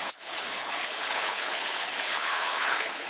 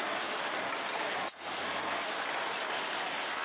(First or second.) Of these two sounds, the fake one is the first